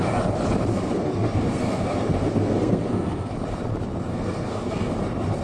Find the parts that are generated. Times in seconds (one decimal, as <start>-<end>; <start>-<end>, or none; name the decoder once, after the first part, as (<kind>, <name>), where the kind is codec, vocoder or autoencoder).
0.7-3.3 (codec, SNAC); 4.1-4.9